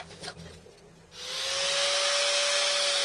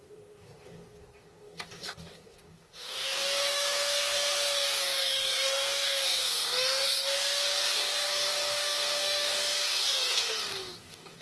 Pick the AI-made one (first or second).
second